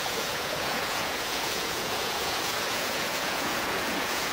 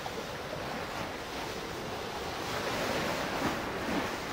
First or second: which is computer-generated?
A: first